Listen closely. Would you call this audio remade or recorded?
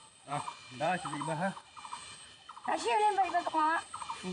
remade